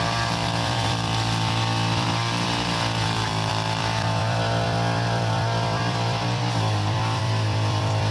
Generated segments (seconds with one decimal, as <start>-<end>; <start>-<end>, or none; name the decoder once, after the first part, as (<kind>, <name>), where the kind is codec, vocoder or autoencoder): 0.0-8.1 (vocoder, BigVGAN v2)